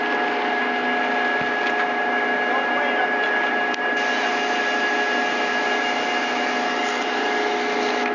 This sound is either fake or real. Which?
real